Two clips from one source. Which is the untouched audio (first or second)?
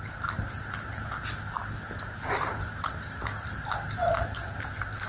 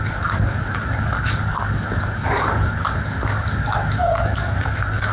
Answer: first